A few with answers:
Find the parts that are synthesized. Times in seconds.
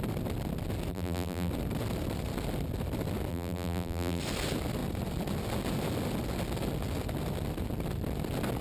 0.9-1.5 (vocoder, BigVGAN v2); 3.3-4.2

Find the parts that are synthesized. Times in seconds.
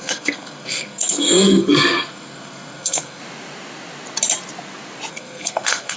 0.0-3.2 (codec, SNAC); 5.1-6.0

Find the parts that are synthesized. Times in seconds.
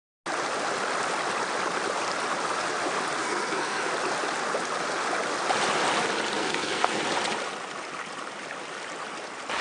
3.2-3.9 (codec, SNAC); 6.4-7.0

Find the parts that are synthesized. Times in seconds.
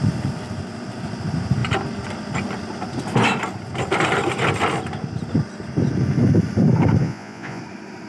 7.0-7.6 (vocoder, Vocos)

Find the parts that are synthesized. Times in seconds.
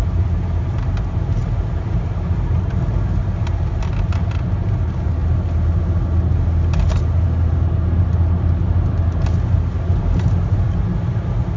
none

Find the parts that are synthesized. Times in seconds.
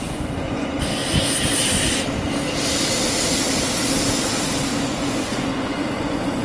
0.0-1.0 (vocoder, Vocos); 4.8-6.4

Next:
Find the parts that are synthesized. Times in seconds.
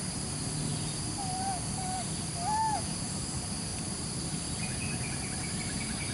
3.7-5.5 (vocoder, BigVGAN v2)